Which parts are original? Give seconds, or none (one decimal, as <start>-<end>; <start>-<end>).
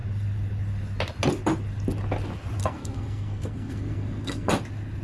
0.0-2.6; 4.5-5.0